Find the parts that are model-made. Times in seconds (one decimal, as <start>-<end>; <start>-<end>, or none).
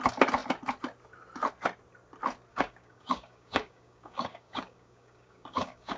2.5-6.0